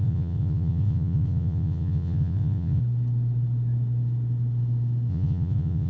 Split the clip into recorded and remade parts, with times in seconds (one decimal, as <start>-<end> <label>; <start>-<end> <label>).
0.0-2.8 remade; 2.8-5.1 recorded; 5.1-5.9 remade